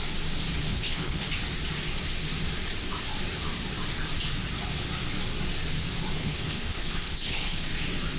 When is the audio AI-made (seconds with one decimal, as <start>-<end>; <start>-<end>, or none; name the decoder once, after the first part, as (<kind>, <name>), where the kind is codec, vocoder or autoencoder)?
0.7-1.3 (codec, HILCodec); 6.2-7.7